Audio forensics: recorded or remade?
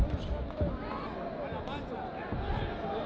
recorded